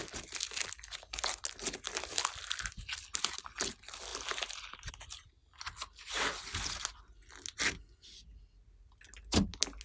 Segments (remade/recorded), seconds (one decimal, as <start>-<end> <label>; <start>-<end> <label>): 0.0-4.1 recorded; 4.1-4.9 remade; 4.9-9.8 recorded